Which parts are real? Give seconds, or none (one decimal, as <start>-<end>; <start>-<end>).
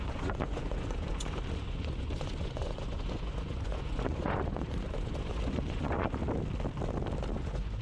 6.2-7.3